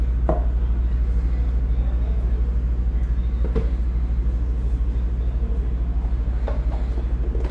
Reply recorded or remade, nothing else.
recorded